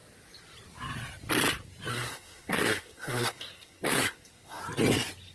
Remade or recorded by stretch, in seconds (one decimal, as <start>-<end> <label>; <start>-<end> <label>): 0.0-1.9 recorded; 1.9-4.6 remade; 4.6-5.3 recorded